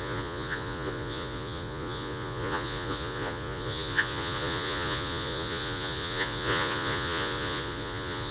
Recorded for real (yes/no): no